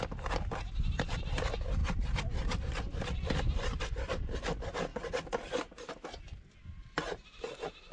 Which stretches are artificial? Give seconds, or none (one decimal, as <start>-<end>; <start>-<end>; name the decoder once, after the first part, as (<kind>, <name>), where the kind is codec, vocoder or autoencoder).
none